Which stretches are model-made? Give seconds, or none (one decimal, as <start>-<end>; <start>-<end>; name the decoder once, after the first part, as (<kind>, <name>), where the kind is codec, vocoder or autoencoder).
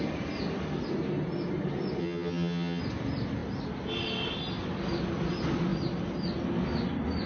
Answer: 2.0-2.8 (vocoder, HiFi-GAN)